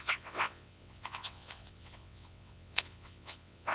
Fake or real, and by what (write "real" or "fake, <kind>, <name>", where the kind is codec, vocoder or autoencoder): fake, vocoder, WaveNeXt